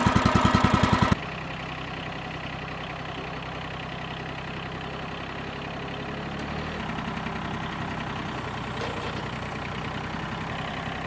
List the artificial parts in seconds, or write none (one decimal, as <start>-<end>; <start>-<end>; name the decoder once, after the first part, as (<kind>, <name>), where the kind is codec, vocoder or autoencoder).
none